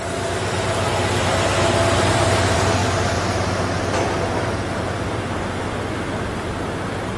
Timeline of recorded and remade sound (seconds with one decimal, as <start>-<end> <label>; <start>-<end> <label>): 0.0-0.9 remade; 0.9-2.0 recorded; 2.0-2.8 remade; 2.8-7.2 recorded